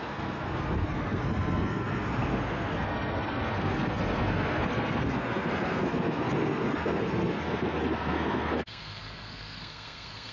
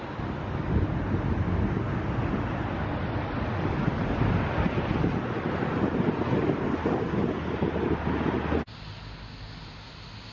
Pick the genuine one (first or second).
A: second